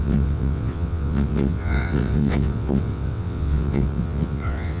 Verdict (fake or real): fake